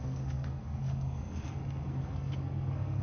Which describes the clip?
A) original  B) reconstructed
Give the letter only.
B